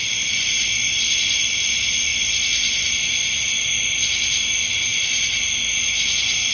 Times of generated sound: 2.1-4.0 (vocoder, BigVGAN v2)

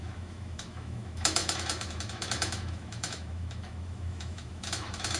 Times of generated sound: 0.0-5.2 (autoencoder, DAC-VAE)